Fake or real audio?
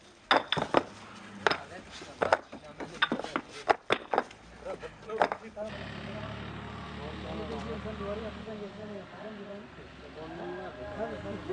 real